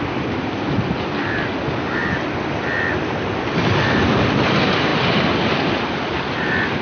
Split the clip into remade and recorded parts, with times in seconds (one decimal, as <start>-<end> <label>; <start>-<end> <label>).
0.0-6.8 recorded